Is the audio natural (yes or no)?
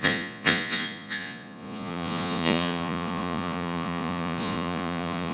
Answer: no